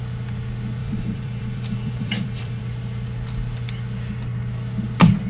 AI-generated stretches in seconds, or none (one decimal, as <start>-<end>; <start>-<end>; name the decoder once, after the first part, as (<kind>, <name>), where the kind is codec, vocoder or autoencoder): 0.8-2.6 (vocoder, BigVGAN v2)